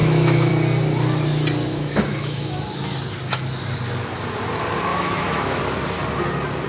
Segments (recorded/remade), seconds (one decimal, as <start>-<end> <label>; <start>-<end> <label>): 0.0-0.5 remade; 0.5-1.7 recorded; 1.7-2.6 remade; 2.6-4.9 recorded; 4.9-5.6 remade; 5.6-6.7 recorded